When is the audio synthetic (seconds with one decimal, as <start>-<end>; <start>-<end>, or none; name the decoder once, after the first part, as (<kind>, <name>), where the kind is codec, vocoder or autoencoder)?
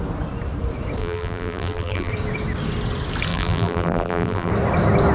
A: 1.0-2.1 (vocoder, BigVGAN v2); 3.3-4.5